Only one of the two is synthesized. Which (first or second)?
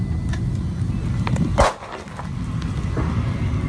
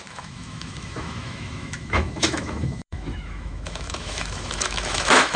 second